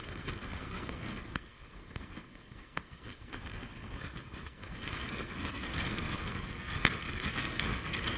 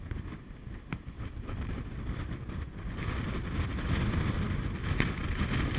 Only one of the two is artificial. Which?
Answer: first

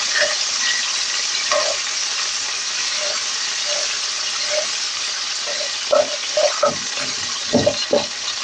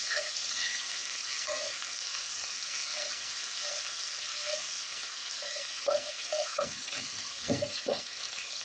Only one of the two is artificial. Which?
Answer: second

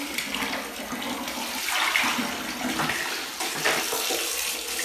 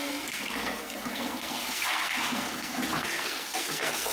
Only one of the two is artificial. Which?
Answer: second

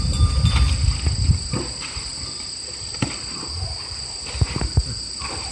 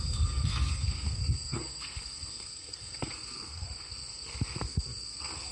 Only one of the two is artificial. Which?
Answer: second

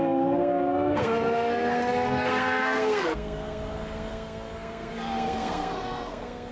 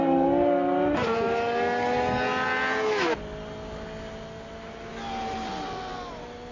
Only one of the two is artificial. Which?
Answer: first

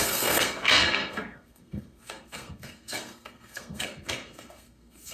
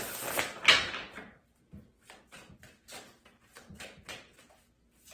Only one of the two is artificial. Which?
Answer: first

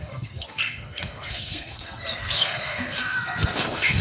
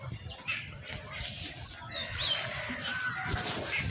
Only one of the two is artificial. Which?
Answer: first